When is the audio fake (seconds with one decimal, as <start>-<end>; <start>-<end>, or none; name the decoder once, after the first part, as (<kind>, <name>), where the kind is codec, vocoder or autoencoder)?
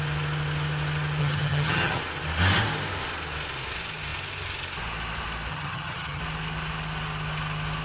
1.2-2.0 (vocoder, HiFi-GAN); 5.5-6.2